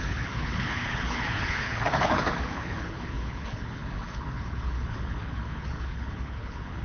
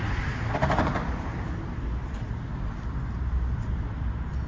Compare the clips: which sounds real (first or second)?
second